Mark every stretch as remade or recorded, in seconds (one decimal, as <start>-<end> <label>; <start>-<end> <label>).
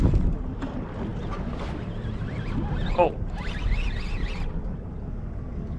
0.0-5.8 recorded